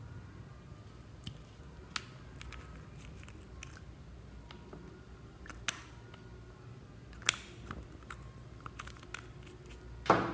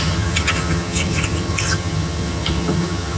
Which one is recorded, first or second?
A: first